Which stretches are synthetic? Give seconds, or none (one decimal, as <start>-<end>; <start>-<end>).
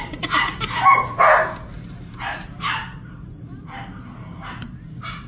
1.7-5.3